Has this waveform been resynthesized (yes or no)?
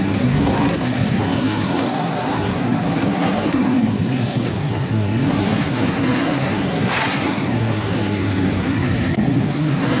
yes